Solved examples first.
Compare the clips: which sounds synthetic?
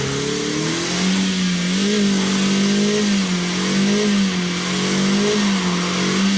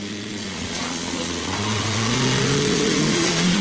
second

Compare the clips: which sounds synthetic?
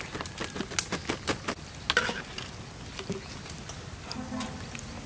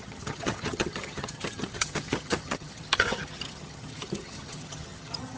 second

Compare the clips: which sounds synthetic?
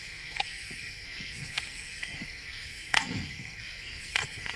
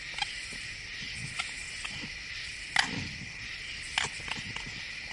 first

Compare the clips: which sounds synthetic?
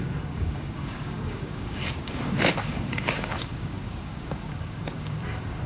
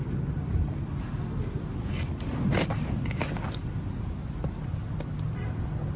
first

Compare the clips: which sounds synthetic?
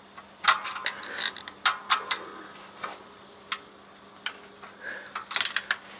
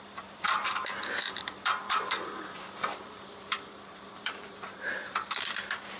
second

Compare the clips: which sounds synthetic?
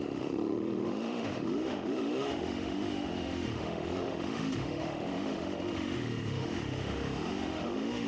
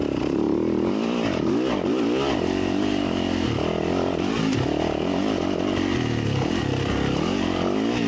first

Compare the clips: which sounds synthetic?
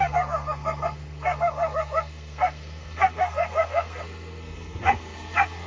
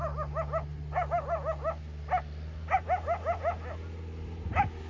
first